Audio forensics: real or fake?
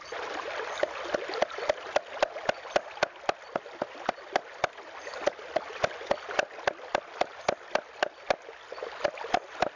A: real